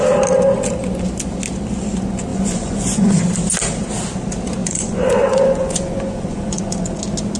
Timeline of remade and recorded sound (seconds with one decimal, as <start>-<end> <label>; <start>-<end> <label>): 0.0-2.3 recorded; 2.3-3.2 remade; 3.2-4.6 recorded; 4.6-7.0 remade; 7.0-7.4 recorded